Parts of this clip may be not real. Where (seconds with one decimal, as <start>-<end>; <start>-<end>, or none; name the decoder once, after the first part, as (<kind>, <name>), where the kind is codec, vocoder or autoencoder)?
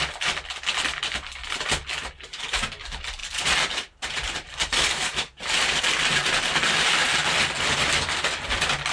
3.2-5.8 (vocoder, BigVGAN v2)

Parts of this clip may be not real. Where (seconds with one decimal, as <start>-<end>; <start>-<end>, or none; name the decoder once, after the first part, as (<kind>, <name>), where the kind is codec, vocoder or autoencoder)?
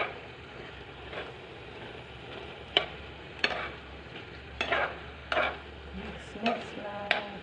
0.0-5.2 (vocoder, BigVGAN v2); 6.0-7.4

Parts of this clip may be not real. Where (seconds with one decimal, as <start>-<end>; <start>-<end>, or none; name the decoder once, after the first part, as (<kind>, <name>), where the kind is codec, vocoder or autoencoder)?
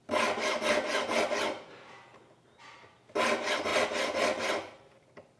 3.7-5.4 (vocoder, BigVGAN v2)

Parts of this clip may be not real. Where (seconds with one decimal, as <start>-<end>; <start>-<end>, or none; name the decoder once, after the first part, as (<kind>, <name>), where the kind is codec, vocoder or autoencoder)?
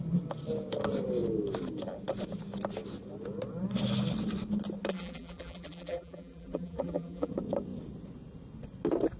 4.9-7.3 (vocoder, BigVGAN v2)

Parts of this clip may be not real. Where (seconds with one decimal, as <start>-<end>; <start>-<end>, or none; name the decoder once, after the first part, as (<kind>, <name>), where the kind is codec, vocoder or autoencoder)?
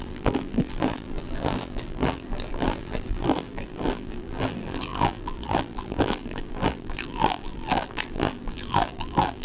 0.0-9.4 (vocoder, BigVGAN v2)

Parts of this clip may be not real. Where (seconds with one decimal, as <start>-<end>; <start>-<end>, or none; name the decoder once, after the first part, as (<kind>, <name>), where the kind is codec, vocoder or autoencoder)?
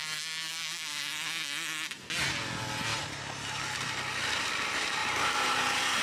2.9-3.5 (vocoder, BigVGAN v2); 5.0-6.0